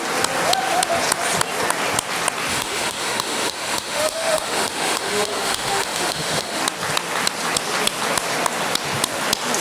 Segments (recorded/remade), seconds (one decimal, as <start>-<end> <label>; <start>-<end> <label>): 0.0-2.5 recorded; 2.5-6.6 remade; 6.6-9.6 recorded